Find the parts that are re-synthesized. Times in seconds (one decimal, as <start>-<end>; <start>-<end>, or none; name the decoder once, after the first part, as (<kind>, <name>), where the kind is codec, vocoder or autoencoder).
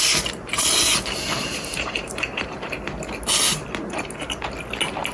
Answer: 0.5-2.6 (vocoder, BigVGAN v2)